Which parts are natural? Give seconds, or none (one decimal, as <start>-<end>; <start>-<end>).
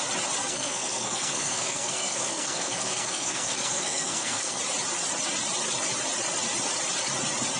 0.0-0.4; 4.6-7.6